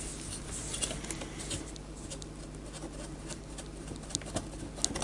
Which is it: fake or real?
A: real